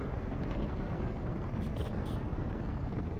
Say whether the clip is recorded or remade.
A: remade